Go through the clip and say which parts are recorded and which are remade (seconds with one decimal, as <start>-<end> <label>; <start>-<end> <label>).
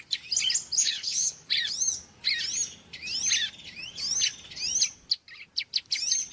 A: 0.0-0.8 recorded; 0.8-1.5 remade; 1.5-6.3 recorded